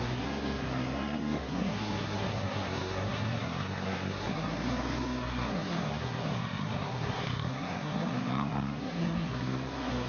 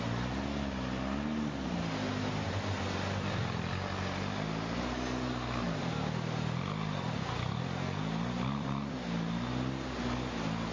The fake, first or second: first